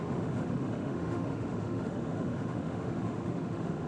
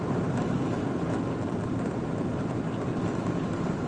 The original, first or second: second